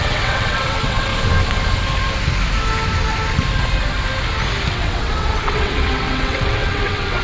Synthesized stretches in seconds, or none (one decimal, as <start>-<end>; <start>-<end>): 0.0-1.1; 4.7-7.2